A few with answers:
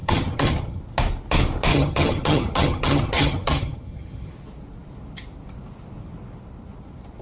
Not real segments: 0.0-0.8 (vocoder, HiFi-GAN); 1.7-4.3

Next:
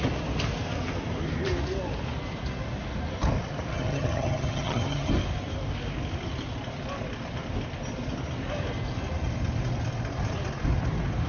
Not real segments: 3.7-5.1 (vocoder, HiFi-GAN)

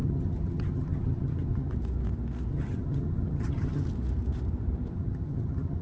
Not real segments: 0.0-1.7 (vocoder, HiFi-GAN); 2.5-3.9; 4.9-5.8

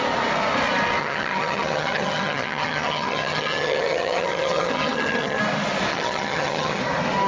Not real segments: 1.0-5.4 (vocoder, HiFi-GAN); 5.9-6.8

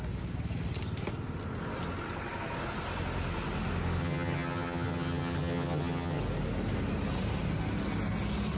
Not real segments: 4.0-6.2 (vocoder, HiFi-GAN)

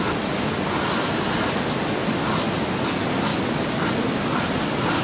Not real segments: none

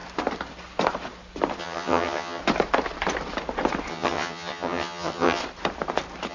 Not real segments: 1.6-2.4 (vocoder, HiFi-GAN); 3.9-5.4

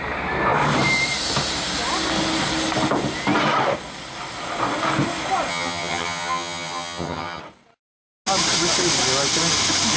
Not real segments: 5.5-7.4 (vocoder, HiFi-GAN)